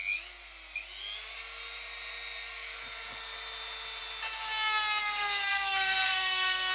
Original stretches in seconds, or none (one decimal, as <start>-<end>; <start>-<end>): 0.0-5.5